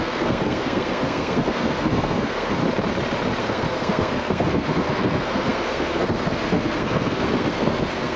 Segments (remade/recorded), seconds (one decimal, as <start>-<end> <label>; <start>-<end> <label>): 0.0-2.6 remade; 2.6-3.4 recorded; 3.4-8.2 remade